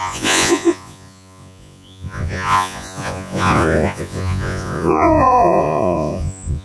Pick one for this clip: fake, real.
fake